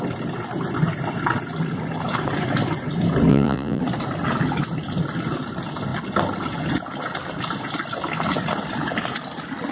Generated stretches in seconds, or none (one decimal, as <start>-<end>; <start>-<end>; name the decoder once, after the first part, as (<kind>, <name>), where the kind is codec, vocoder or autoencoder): 3.3-3.8 (vocoder, Vocos)